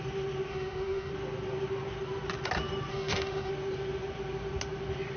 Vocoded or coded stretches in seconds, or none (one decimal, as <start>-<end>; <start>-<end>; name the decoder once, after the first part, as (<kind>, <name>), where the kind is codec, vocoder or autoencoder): 0.5-1.1 (autoencoder, DAC-VAE); 2.9-3.5